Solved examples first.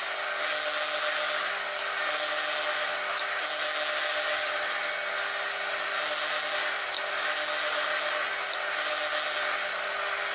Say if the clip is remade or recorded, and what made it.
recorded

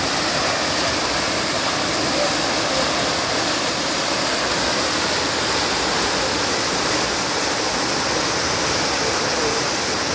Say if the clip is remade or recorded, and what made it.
recorded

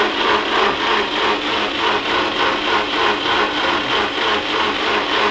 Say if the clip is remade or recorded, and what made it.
recorded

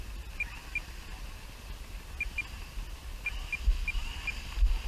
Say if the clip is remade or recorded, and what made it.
recorded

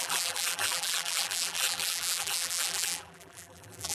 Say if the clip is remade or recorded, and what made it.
remade, vocoder, BigVGAN v2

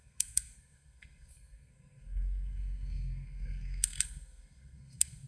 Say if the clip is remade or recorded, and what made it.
remade, codec, SNAC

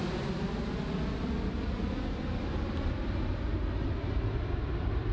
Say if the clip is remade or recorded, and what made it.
recorded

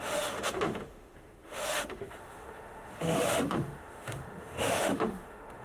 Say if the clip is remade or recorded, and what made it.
remade, autoencoder, DAC-VAE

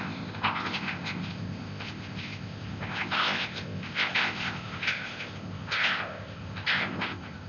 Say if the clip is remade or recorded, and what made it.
remade, codec, ZipCodec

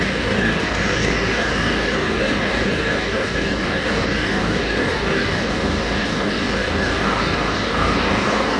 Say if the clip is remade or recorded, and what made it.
remade, codec, DAC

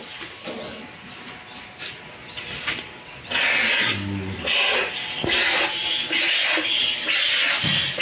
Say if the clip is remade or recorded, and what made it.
recorded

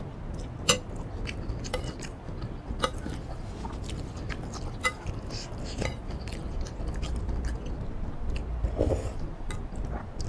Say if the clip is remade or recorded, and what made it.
recorded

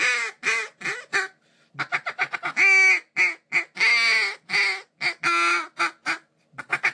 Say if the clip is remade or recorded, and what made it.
recorded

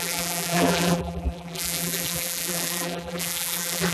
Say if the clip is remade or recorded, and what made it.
remade, vocoder, BigVGAN v2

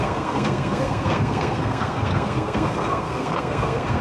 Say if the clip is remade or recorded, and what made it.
remade, codec, SNAC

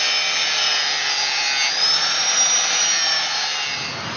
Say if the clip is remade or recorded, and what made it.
recorded